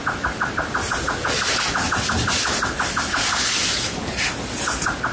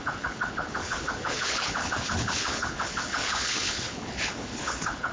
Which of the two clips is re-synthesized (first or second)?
second